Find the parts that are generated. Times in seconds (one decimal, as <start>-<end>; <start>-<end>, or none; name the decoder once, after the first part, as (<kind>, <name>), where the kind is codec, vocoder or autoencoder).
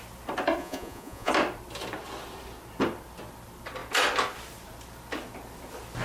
0.6-1.3 (vocoder, Vocos)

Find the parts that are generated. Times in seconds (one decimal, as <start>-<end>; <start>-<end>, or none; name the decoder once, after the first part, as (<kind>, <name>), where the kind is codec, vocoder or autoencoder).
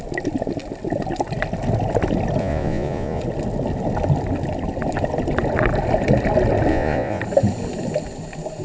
2.4-3.2 (vocoder, Vocos); 6.7-7.2